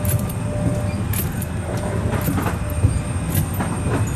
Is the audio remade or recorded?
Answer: recorded